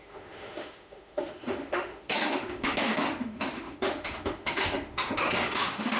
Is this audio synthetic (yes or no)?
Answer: yes